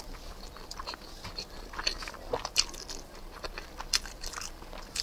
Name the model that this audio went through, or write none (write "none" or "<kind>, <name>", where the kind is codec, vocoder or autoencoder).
none